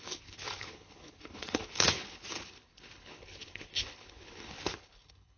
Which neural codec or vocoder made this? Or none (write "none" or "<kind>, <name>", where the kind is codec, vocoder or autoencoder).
codec, HILCodec